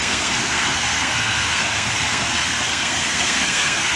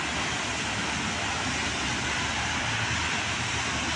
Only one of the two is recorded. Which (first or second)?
second